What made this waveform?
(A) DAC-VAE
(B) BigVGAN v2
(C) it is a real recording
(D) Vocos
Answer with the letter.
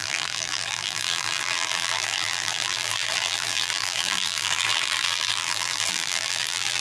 B